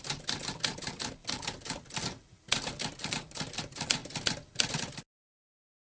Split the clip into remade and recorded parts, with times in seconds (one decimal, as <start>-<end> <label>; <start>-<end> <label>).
0.0-4.0 remade; 4.0-5.9 recorded